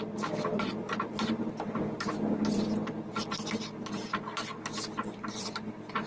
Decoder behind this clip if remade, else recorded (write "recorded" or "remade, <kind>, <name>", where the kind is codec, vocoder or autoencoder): recorded